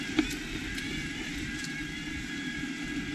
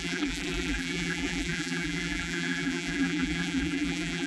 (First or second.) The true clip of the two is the first